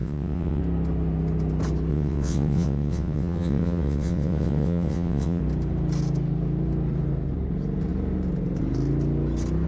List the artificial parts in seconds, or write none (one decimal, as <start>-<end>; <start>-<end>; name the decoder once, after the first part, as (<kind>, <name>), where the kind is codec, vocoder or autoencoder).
0.0-0.6 (vocoder, WaveNeXt); 1.9-5.4